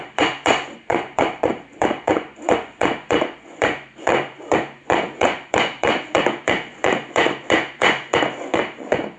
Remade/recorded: remade